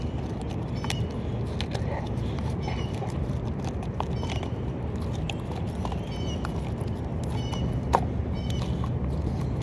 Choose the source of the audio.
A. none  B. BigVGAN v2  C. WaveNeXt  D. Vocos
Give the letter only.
A